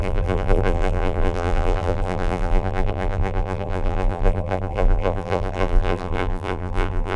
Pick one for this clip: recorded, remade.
remade